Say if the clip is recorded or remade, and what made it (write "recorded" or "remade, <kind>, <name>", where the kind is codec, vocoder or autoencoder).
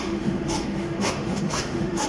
remade, autoencoder, DAC-VAE